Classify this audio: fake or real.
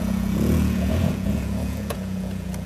fake